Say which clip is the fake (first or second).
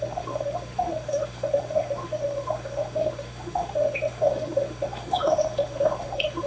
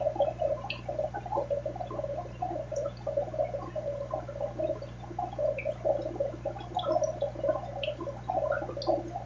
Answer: first